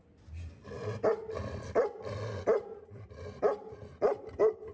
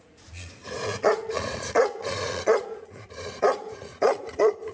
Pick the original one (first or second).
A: first